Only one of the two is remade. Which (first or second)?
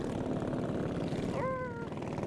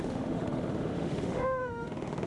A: second